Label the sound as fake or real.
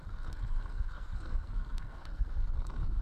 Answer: fake